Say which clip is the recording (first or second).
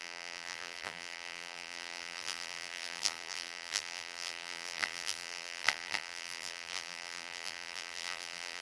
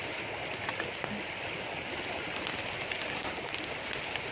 second